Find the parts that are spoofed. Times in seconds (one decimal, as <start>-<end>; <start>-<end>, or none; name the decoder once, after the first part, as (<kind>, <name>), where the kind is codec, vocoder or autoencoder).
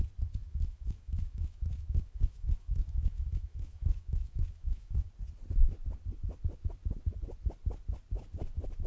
0.4-5.1 (autoencoder, DAC-VAE)